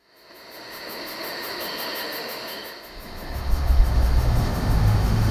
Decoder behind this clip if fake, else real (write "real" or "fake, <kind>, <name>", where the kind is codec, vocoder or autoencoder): fake, autoencoder, DAC-VAE